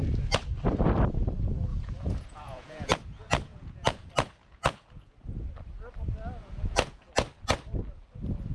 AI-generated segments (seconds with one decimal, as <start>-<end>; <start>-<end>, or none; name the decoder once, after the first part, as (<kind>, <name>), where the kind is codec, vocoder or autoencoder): 1.7-5.5 (vocoder, Vocos); 6.4-7.1